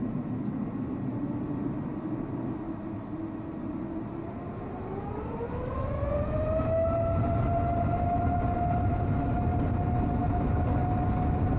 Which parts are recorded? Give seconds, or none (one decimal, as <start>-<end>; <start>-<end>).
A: 0.0-11.6